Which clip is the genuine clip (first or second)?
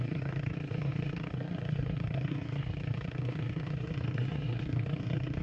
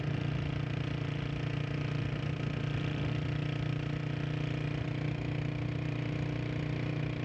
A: second